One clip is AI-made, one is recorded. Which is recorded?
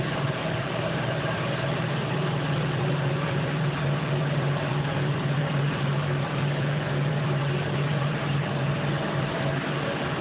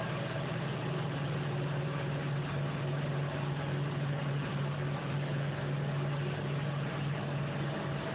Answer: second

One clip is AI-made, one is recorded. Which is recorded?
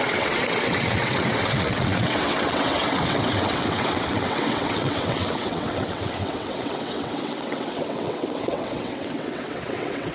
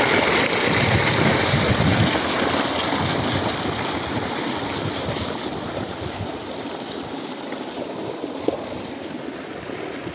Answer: second